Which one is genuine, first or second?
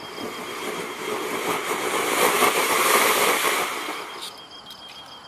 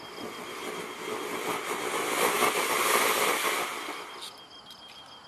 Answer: second